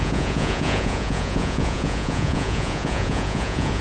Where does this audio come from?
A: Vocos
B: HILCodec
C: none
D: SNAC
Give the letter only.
A